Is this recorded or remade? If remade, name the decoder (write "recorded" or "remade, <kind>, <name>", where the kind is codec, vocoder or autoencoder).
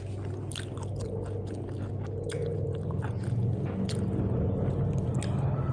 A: recorded